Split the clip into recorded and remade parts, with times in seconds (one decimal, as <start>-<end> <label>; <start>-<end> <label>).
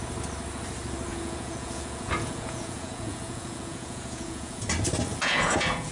0.0-1.1 recorded; 1.1-4.6 remade; 4.6-5.1 recorded; 5.1-5.9 remade